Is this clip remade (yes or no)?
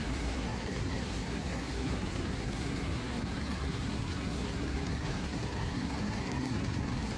yes